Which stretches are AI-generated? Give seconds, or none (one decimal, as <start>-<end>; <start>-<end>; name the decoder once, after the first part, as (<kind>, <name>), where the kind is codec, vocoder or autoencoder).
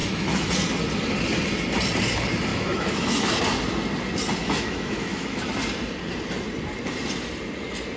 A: 0.0-0.5 (autoencoder, DAC-VAE); 2.5-3.4; 4.4-5.5